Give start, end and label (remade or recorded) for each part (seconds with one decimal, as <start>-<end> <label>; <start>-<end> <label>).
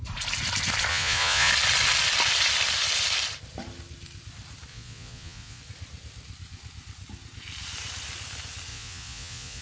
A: 0.0-0.9 recorded; 0.9-1.5 remade; 1.5-4.7 recorded; 4.7-5.6 remade; 5.6-8.7 recorded; 8.7-9.6 remade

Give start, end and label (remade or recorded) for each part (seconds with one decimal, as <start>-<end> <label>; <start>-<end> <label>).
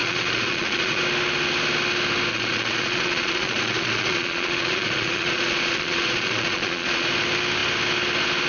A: 0.0-1.0 remade; 1.0-2.3 recorded; 2.3-7.1 remade; 7.1-8.5 recorded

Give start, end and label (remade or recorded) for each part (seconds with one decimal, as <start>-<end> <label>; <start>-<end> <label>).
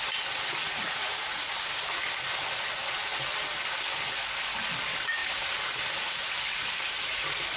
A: 0.0-0.6 recorded; 0.6-1.5 remade; 1.5-7.6 recorded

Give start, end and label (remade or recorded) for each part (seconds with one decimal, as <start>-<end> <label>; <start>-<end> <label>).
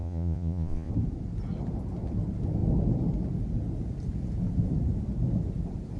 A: 0.0-0.9 remade; 0.9-6.0 recorded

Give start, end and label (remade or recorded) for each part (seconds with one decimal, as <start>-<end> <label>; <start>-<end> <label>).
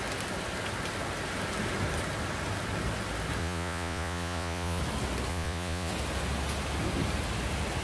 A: 0.0-3.4 recorded; 3.4-4.8 remade; 4.8-5.3 recorded; 5.3-5.9 remade; 5.9-7.8 recorded